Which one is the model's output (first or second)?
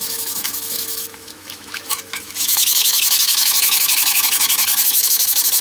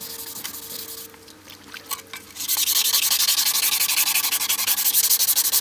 first